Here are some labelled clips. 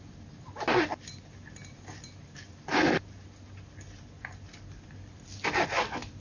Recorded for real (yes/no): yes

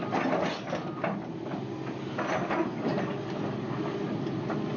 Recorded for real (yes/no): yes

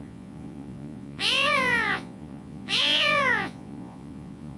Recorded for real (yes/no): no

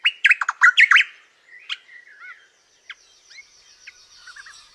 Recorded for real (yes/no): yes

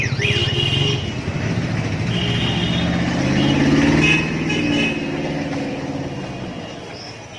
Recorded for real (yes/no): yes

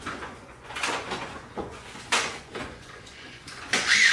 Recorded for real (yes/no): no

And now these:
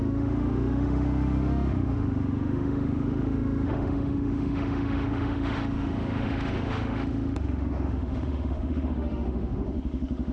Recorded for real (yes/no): no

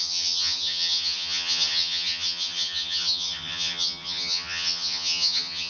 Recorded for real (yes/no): no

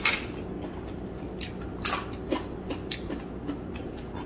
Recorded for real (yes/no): yes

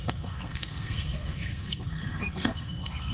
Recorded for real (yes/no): no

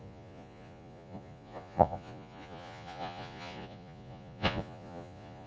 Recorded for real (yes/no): no